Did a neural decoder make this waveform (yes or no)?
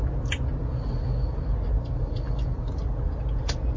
no